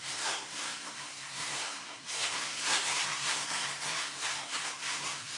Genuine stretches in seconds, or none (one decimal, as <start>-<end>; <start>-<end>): none